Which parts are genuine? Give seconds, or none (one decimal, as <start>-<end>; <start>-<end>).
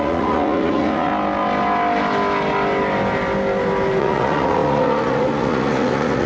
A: 1.1-4.0